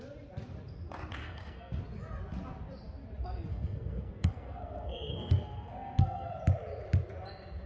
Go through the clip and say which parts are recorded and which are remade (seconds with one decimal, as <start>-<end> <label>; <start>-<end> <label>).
0.0-1.2 recorded; 1.2-1.8 remade; 1.8-3.5 recorded; 3.5-6.3 remade; 6.3-7.7 recorded

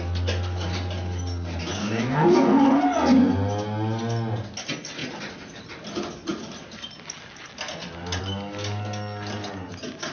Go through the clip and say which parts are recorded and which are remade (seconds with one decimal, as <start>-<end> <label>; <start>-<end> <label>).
0.0-1.8 recorded; 1.8-2.8 remade; 2.8-10.1 recorded

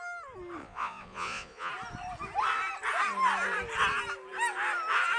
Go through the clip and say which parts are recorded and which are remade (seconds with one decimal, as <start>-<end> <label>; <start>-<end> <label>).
0.0-0.6 recorded; 0.6-1.7 remade; 1.7-5.2 recorded

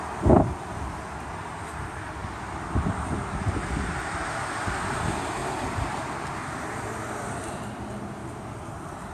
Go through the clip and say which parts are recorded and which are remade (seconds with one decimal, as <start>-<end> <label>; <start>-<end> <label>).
0.0-9.1 recorded

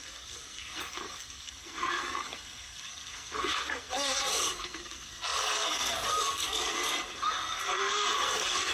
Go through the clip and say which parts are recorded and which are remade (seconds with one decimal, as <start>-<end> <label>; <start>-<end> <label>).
0.0-8.7 remade

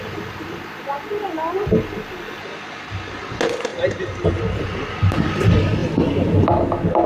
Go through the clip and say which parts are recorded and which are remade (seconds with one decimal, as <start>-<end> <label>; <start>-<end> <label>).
0.0-3.7 recorded; 3.7-4.4 remade; 4.4-7.1 recorded

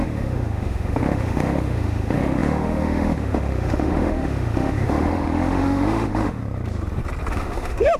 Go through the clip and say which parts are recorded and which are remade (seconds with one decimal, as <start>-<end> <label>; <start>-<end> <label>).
0.0-6.4 remade; 6.4-7.3 recorded; 7.3-8.0 remade

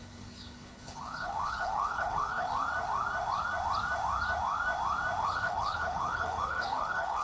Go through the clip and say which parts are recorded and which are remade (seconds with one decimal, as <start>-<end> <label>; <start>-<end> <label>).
0.0-2.5 remade; 2.5-5.2 recorded; 5.2-7.2 remade